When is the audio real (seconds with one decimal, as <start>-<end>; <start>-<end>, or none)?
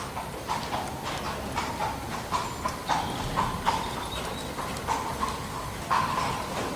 0.0-6.8